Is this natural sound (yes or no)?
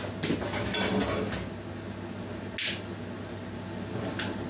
yes